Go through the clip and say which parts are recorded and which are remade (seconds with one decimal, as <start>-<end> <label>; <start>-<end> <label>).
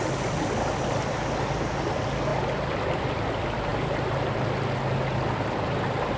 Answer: 0.0-6.2 recorded